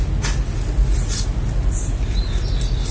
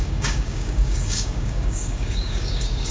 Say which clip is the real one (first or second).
first